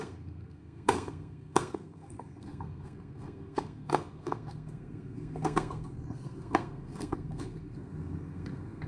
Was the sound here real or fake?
fake